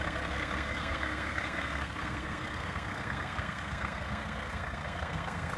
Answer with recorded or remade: remade